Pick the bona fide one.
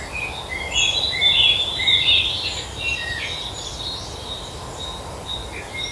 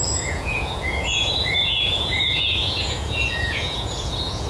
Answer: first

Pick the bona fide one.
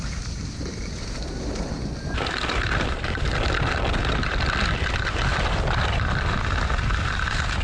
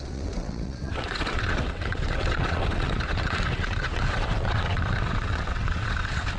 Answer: first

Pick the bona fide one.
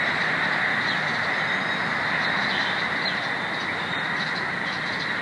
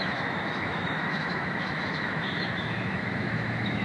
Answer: first